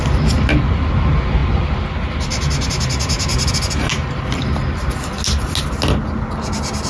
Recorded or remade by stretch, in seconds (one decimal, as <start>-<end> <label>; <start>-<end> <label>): 0.0-6.9 recorded